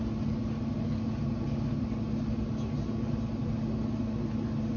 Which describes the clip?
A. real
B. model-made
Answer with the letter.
A